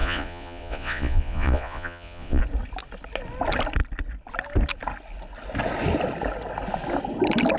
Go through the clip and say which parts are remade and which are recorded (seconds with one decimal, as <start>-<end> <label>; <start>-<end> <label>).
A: 0.0-2.4 remade; 2.4-7.6 recorded